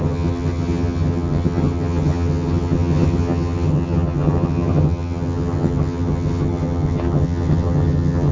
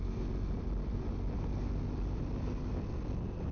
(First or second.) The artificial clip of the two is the first